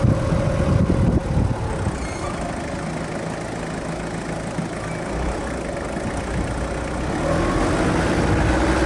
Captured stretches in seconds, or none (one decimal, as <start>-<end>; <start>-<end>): 0.0-8.9